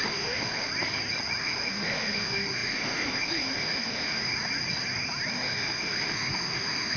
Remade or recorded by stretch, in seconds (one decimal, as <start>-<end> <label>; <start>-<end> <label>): 0.0-0.7 remade; 0.7-1.4 recorded; 1.4-4.3 remade; 4.3-5.3 recorded; 5.3-7.0 remade